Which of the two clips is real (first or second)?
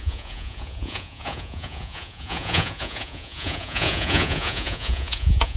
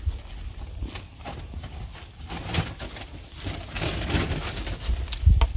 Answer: second